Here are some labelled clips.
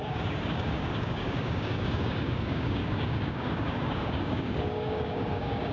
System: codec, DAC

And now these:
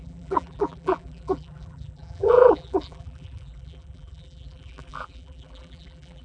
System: vocoder, BigVGAN v2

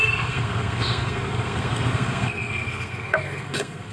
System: codec, SNAC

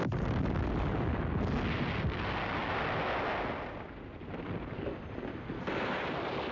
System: none